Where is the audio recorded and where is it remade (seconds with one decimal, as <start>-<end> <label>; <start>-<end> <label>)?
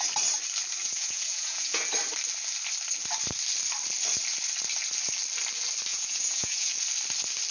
0.0-0.8 recorded; 0.8-1.8 remade; 1.8-5.9 recorded; 5.9-6.7 remade; 6.7-7.5 recorded